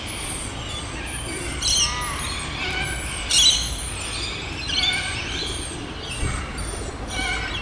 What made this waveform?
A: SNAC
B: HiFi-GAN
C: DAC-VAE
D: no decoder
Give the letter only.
D